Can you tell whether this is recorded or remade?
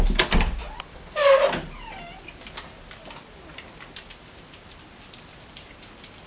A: recorded